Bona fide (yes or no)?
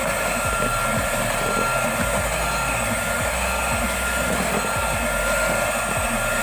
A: yes